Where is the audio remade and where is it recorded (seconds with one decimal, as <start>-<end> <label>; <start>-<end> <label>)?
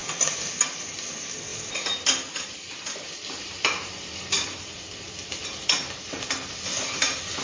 0.0-1.5 recorded; 1.5-5.9 remade; 5.9-7.4 recorded